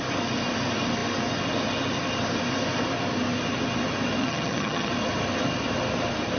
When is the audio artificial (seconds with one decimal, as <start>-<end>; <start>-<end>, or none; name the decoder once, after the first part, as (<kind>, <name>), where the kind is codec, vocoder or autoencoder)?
4.2-4.9 (vocoder, HiFi-GAN)